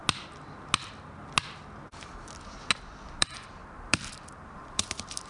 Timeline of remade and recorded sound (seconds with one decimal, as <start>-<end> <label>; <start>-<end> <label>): 0.0-3.2 recorded; 3.2-5.3 remade